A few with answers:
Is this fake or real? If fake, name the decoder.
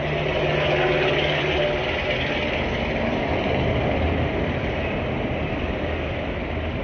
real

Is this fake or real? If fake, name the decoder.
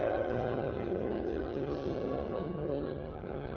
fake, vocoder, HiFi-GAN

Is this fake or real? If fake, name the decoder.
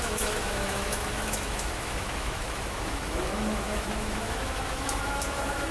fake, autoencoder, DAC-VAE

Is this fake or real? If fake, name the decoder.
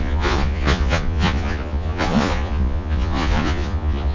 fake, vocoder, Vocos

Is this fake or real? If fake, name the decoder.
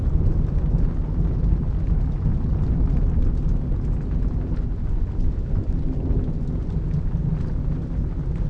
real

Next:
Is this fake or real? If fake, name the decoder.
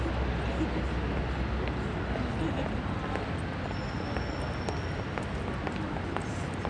real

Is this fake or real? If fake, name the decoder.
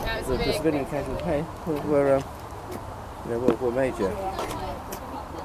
real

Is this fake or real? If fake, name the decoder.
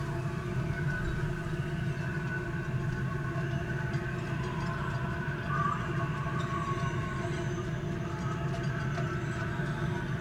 real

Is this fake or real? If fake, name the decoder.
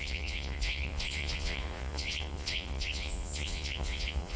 fake, vocoder, Vocos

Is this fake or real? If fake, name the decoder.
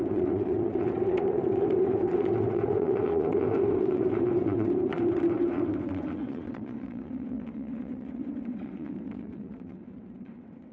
fake, vocoder, WaveNeXt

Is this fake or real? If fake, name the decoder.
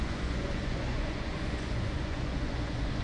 fake, vocoder, Vocos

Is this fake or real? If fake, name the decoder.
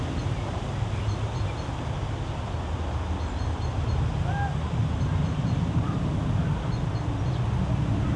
real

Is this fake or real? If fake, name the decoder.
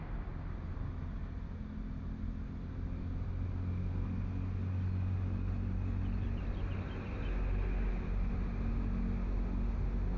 real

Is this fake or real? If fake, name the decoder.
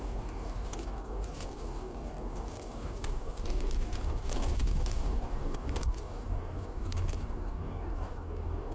fake, codec, DAC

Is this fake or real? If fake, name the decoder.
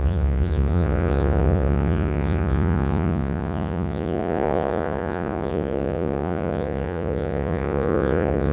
fake, vocoder, Vocos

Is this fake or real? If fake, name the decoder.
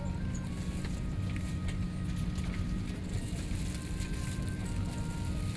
real